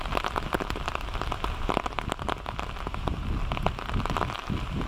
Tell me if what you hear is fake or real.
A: real